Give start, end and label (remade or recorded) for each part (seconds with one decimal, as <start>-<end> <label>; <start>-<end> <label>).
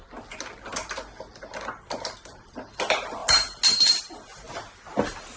0.0-5.4 recorded